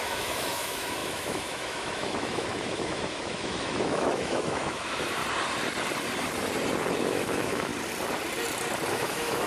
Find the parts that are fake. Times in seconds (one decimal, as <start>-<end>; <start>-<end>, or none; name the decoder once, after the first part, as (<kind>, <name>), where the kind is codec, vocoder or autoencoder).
0.0-5.2 (autoencoder, DAC-VAE); 7.0-7.7; 8.9-9.5